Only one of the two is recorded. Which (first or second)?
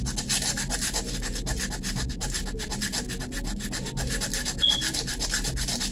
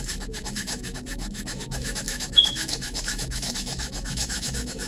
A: first